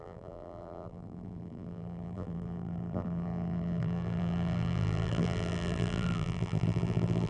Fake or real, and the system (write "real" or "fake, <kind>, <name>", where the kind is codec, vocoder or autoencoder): fake, vocoder, BigVGAN v2